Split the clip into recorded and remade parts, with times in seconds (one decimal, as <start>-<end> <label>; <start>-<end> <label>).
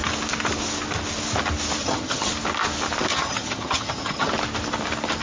0.0-1.8 recorded; 1.8-2.3 remade; 2.3-3.1 recorded; 3.1-4.3 remade; 4.3-5.2 recorded